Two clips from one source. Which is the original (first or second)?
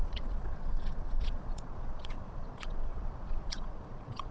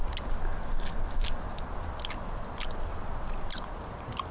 second